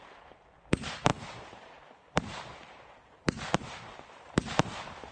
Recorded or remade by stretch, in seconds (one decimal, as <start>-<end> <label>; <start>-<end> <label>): 0.0-5.1 remade